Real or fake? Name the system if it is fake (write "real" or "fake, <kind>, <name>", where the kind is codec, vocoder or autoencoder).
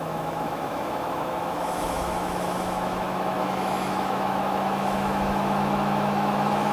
fake, autoencoder, DAC-VAE